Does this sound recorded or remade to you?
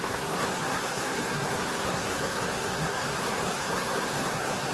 remade